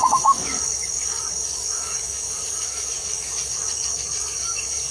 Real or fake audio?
fake